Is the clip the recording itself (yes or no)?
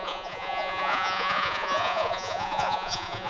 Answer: no